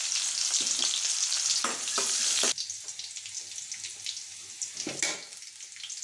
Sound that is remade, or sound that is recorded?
recorded